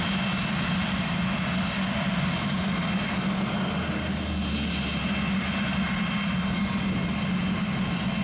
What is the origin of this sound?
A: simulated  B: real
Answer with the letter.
B